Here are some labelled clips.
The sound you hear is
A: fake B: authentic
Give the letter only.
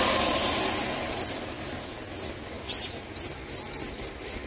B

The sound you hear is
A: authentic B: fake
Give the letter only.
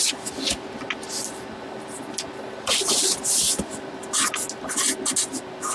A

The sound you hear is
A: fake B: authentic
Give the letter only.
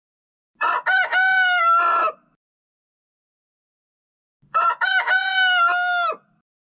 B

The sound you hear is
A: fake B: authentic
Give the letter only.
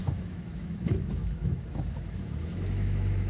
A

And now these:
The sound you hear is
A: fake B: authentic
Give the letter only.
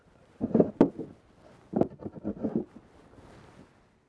B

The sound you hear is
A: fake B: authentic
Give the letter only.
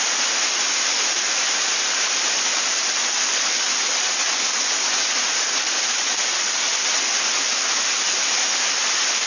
B